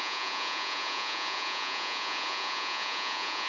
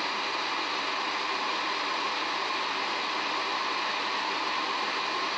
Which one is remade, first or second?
first